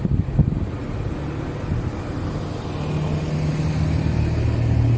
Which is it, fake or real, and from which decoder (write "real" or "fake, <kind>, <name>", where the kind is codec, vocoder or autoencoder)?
real